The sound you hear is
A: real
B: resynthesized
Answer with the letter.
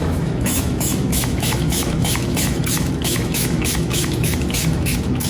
B